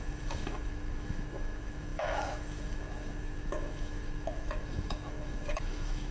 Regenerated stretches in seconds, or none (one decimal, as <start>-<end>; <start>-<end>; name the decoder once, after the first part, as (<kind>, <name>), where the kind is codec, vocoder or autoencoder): 0.0-6.1 (autoencoder, DAC-VAE)